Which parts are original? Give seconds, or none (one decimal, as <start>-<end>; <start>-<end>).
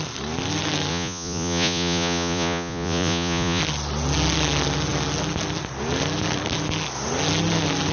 0.0-0.9; 3.6-7.9